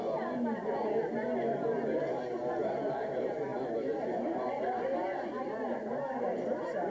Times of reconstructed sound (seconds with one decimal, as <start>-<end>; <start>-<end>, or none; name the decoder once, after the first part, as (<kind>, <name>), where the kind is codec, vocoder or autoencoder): none